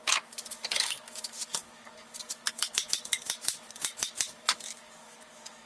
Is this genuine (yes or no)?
no